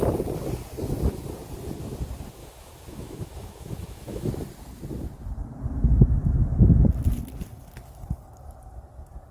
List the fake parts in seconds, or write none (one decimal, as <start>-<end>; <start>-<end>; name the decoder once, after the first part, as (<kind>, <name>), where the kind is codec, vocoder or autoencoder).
2.4-4.3 (autoencoder, DAC-VAE)